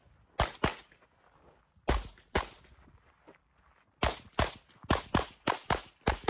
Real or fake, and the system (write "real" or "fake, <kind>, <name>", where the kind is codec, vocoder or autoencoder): real